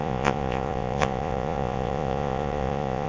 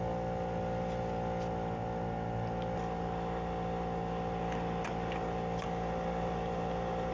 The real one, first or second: second